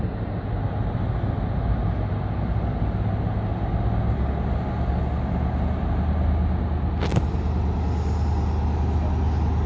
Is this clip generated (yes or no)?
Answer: no